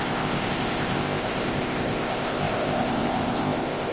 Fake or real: fake